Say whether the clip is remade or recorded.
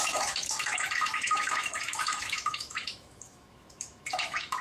remade